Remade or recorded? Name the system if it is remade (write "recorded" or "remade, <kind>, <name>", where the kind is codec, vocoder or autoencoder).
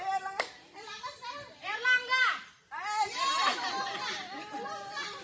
remade, vocoder, BigVGAN v2